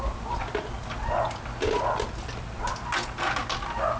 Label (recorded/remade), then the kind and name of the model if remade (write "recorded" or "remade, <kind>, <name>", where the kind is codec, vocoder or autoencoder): recorded